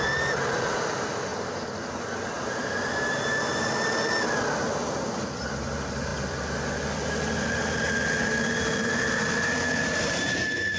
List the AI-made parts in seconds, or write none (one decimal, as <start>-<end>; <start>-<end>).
1.3-3.9